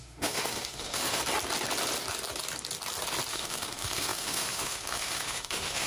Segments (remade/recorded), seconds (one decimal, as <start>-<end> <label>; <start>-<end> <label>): 0.0-1.2 remade; 1.2-3.3 recorded; 3.3-5.9 remade